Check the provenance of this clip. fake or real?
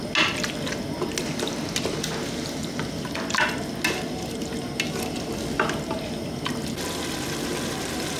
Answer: real